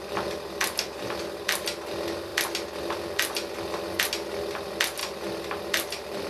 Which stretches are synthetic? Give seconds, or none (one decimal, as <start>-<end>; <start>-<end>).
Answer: none